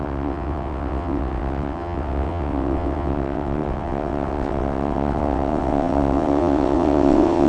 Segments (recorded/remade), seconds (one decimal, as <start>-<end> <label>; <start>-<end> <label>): 0.0-7.5 remade